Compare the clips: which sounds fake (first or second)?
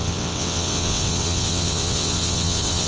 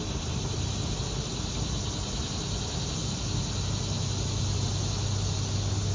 first